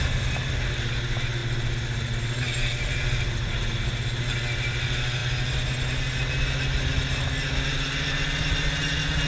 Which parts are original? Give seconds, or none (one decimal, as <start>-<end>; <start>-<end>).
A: 0.0-9.3